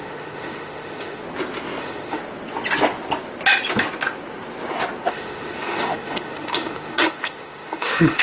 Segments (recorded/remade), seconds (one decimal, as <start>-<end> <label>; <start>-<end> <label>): 0.0-1.2 remade; 1.2-1.8 recorded; 1.8-2.2 remade; 2.2-5.1 recorded; 5.1-8.2 remade